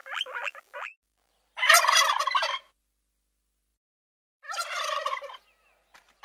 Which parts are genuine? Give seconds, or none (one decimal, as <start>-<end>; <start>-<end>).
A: 1.3-6.2